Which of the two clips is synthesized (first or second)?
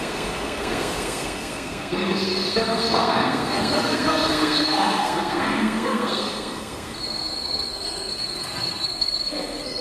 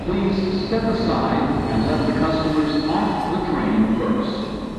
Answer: first